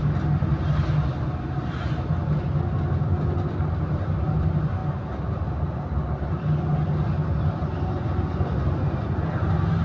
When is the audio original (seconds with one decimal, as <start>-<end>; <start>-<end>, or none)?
0.0-9.8